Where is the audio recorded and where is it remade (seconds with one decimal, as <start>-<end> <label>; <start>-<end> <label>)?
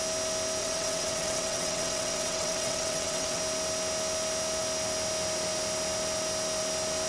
0.0-0.6 recorded; 0.6-3.4 remade; 3.4-7.1 recorded